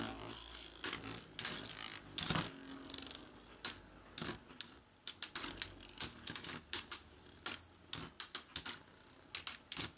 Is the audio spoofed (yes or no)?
no